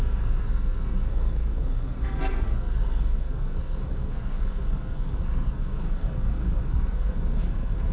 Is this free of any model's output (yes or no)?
no